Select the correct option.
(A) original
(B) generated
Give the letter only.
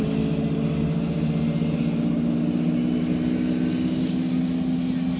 A